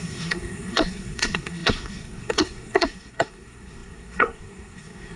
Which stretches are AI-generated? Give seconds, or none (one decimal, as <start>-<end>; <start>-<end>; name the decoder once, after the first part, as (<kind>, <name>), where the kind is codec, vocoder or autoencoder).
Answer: 0.0-5.2 (codec, SNAC)